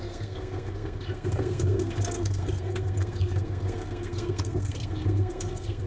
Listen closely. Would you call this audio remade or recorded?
remade